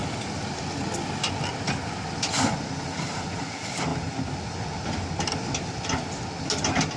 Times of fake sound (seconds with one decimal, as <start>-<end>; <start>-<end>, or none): 1.2-3.9